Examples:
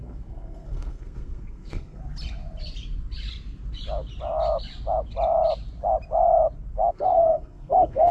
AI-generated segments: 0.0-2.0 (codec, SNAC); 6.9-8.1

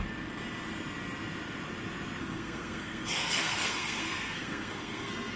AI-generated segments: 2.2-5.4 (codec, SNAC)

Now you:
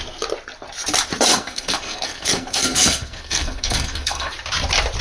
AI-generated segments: 1.3-4.3 (codec, SNAC)